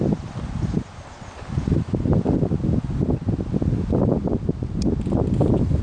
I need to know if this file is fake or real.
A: real